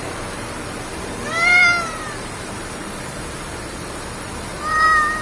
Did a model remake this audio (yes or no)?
yes